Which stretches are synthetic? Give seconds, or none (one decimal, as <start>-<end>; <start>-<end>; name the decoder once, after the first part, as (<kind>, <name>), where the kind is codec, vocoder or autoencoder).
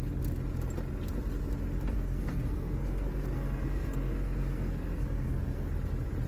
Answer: 1.9-5.7 (codec, SNAC)